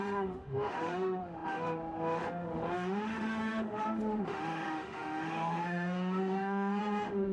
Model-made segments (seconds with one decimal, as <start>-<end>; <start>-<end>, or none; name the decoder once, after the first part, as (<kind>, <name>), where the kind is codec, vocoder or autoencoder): 0.0-7.3 (autoencoder, DAC-VAE)